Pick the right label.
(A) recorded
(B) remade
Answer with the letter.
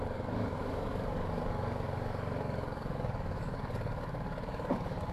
B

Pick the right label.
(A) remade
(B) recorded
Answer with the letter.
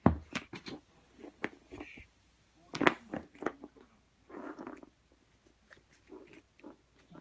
B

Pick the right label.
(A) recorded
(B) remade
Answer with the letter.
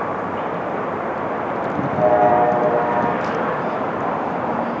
B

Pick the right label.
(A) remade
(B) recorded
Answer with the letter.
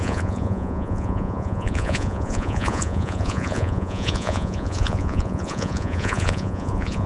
A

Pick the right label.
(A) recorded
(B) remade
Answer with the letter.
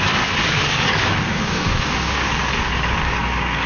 B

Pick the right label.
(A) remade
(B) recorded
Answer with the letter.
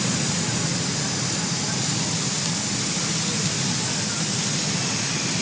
B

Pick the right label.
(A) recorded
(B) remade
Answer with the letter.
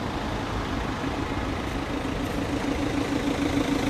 A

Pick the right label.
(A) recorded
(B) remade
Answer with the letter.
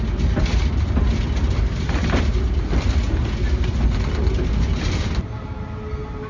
A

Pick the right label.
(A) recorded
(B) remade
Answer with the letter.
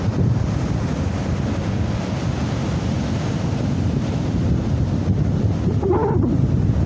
A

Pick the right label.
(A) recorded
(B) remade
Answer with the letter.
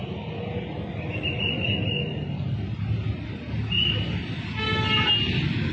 A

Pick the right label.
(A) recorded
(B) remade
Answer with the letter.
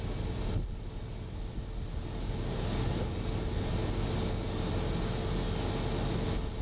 A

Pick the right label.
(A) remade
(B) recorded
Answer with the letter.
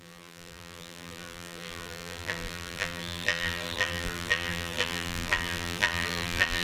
A